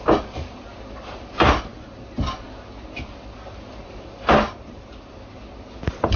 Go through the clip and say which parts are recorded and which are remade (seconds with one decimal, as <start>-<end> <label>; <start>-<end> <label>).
0.0-6.2 recorded